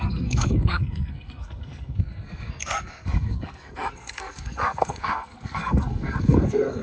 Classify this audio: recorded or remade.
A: remade